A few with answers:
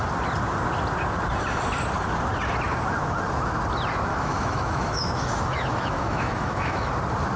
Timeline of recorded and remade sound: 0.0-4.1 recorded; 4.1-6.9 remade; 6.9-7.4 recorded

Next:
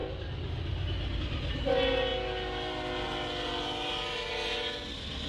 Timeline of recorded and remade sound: 0.0-5.3 recorded

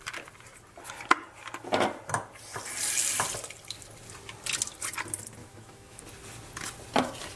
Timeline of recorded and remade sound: 0.0-5.4 recorded; 5.4-6.0 remade; 6.0-7.4 recorded